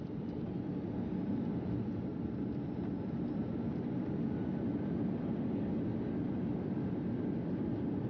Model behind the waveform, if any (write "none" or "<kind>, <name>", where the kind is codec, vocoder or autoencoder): vocoder, BigVGAN v2